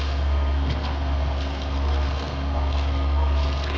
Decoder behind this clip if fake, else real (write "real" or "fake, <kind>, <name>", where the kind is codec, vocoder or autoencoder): fake, codec, SNAC